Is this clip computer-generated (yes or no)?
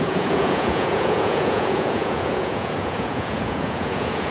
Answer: yes